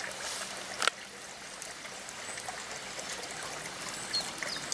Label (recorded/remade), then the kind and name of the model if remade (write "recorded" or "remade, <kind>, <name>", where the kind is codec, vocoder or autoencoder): recorded